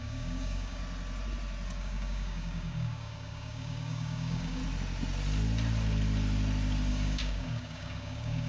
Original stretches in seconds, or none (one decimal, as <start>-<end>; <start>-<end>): 0.8-1.8; 4.6-6.9